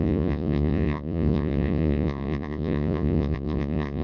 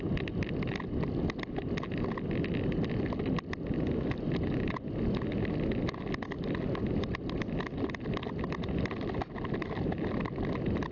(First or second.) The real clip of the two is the second